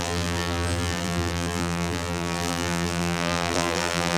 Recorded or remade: remade